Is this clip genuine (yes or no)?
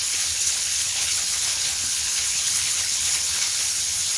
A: no